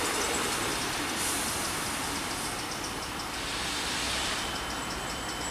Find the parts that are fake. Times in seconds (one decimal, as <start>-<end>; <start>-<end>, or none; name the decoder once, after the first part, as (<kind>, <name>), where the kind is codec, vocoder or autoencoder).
none